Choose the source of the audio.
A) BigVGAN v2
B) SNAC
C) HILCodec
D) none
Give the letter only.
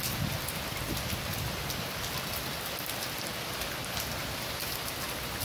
A